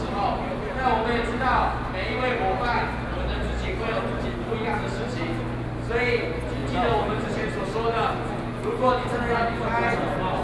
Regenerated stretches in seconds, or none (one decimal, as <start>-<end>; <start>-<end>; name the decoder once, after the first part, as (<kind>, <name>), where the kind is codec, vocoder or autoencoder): none